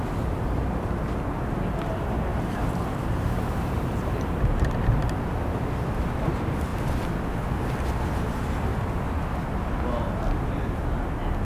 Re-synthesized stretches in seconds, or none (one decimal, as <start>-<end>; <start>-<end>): 2.3-4.8; 8.7-9.7